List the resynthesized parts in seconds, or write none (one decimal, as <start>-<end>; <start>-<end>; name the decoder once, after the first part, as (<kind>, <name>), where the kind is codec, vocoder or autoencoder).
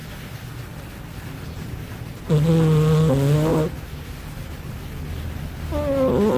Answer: 3.1-3.5 (vocoder, BigVGAN v2); 4.8-6.4